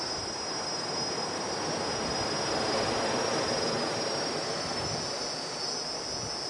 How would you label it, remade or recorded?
recorded